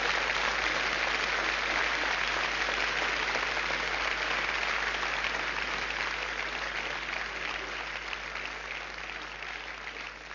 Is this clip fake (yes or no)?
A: no